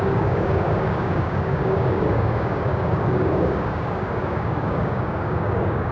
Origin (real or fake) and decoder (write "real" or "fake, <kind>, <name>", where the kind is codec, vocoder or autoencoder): fake, codec, DAC